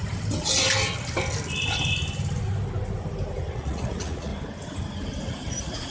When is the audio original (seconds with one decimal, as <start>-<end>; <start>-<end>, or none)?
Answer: 0.0-3.5; 4.3-5.2